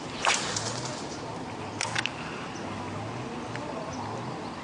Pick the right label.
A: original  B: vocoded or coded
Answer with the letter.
A